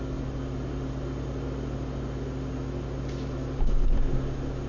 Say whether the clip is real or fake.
real